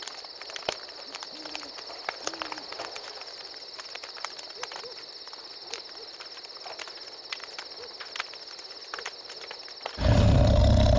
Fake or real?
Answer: real